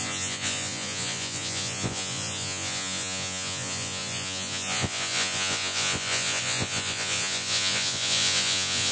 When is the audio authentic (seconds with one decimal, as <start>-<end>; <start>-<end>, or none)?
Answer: none